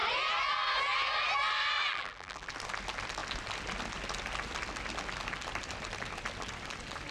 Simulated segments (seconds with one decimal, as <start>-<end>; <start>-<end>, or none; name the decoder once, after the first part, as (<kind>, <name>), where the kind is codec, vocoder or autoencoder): 1.9-2.5 (vocoder, BigVGAN v2)